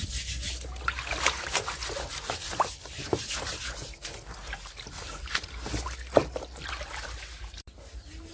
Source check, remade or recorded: recorded